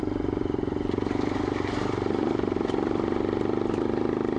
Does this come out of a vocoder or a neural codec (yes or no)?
no